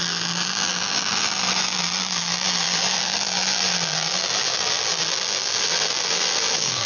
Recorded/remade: remade